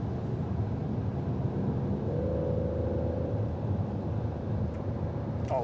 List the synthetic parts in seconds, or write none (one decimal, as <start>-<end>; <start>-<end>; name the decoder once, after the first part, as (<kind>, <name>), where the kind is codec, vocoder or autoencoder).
none